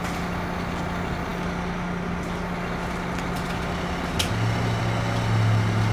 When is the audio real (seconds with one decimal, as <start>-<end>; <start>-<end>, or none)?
0.0-5.9